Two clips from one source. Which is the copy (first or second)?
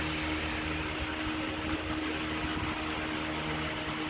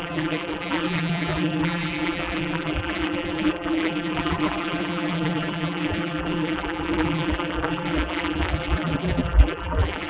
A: second